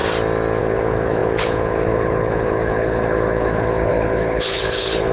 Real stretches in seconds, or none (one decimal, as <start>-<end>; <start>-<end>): 0.0-0.6